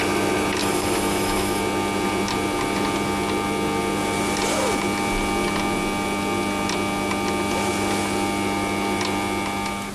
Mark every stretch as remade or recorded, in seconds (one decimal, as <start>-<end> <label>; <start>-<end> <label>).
0.0-0.6 recorded; 0.6-1.6 remade; 1.6-9.9 recorded